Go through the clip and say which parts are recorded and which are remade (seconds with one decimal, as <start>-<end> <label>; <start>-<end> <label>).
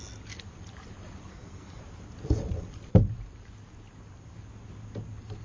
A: 0.0-1.3 recorded; 1.3-1.8 remade; 1.8-5.4 recorded